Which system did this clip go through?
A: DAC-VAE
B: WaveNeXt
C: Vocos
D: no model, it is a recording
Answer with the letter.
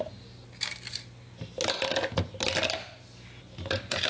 D